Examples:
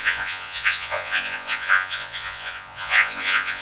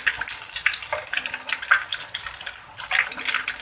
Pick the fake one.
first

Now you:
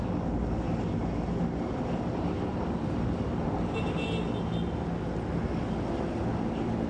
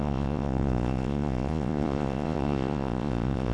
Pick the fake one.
second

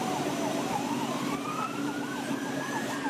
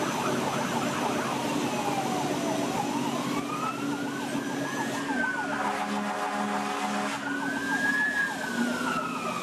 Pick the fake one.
first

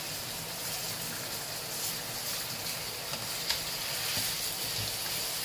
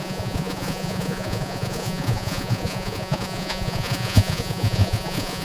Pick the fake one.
second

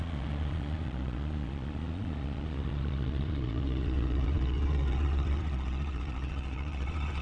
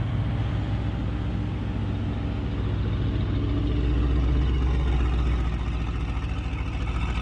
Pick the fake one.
first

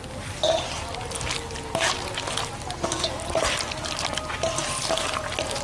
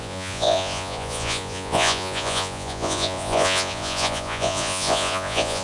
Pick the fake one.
second